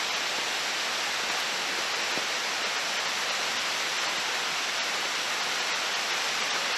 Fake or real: real